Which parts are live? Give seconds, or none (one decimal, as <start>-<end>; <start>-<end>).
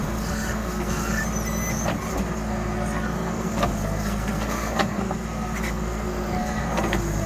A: 1.2-2.1